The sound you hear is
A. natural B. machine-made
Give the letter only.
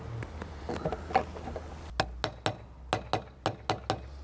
A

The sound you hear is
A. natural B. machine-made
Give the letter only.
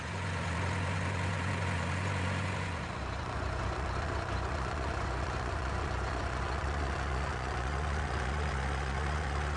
B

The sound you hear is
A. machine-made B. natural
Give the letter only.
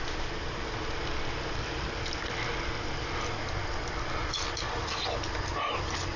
B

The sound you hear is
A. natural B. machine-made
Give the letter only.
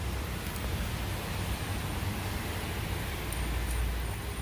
A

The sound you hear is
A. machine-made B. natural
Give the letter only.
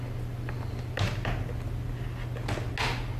B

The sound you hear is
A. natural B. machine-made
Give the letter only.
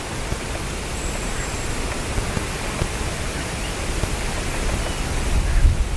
A